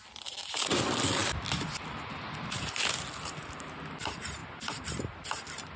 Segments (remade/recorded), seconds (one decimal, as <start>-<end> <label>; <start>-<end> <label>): 0.0-5.8 recorded